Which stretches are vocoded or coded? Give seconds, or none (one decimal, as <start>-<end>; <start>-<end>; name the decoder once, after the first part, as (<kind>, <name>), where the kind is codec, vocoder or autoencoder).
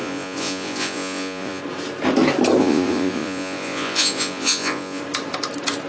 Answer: 0.0-1.6 (vocoder, Vocos); 2.6-5.0